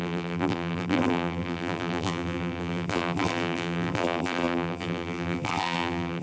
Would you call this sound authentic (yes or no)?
no